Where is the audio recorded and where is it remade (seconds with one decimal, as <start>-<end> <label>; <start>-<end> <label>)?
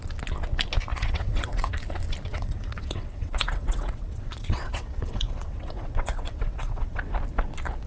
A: 0.0-0.9 recorded; 0.9-1.7 remade; 1.7-2.3 recorded; 2.3-7.0 remade; 7.0-7.9 recorded